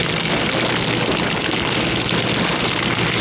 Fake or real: real